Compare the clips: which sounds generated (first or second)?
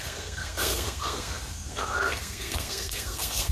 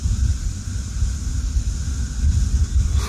first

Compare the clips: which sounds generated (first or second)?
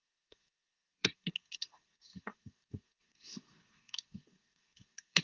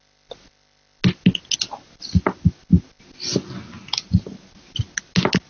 first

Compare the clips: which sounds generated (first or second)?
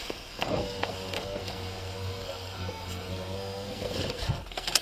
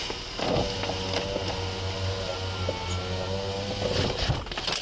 first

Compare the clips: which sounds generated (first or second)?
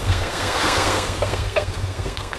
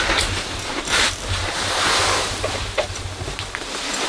first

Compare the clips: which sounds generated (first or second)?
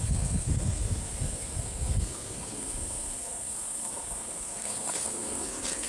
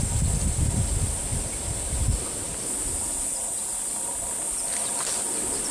first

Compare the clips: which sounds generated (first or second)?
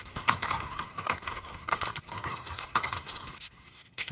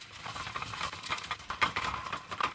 first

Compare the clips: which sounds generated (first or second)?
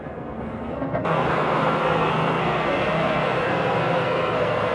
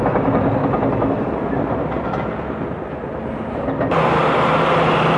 first